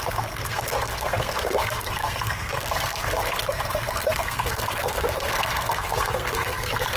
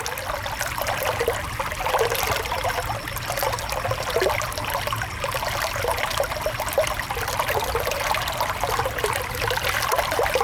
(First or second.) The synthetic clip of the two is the first